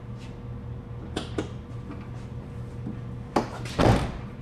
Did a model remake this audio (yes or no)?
no